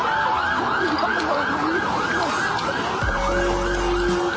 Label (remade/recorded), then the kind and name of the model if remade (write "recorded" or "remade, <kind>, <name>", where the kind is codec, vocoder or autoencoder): recorded